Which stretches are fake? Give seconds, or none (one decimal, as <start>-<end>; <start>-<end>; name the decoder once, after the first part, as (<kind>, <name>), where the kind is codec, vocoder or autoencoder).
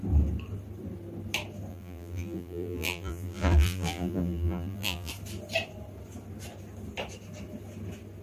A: 1.7-5.1 (vocoder, BigVGAN v2)